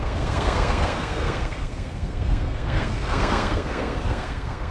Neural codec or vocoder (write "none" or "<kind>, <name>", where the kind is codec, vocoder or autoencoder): codec, SNAC